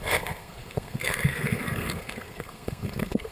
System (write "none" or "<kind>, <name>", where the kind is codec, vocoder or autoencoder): codec, SNAC